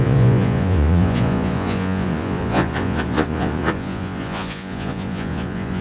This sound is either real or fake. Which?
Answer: fake